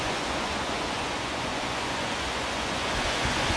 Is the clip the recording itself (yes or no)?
no